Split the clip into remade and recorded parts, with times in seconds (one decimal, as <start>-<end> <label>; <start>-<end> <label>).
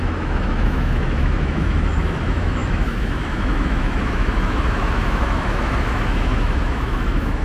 0.0-7.4 remade